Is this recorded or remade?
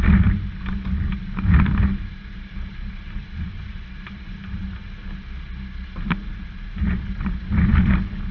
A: recorded